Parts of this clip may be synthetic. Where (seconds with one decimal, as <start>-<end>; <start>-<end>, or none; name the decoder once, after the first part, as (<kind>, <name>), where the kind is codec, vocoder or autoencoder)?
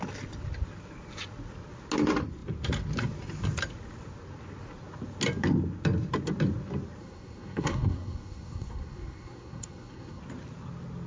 7.0-10.2 (codec, SNAC)